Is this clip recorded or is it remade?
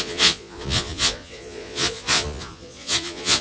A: remade